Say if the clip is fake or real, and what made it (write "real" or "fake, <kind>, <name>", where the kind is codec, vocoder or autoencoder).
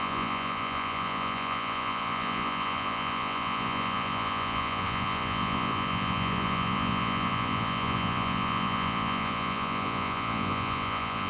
fake, vocoder, Vocos